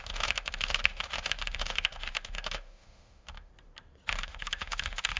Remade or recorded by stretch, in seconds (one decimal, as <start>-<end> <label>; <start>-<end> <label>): 0.0-3.5 remade; 3.5-4.1 recorded; 4.1-5.2 remade